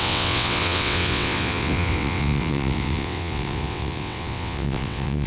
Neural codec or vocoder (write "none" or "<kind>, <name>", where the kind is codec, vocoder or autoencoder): vocoder, WaveNeXt